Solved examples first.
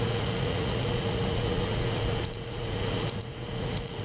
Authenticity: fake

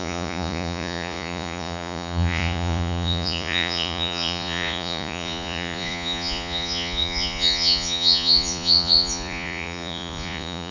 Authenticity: fake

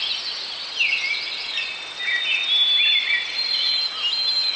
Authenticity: real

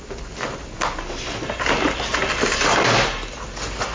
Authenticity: real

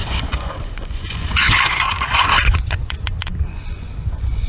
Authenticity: fake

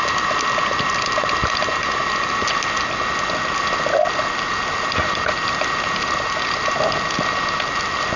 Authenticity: real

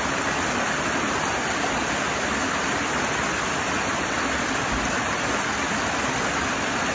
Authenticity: real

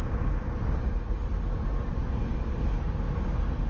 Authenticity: real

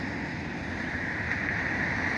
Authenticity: real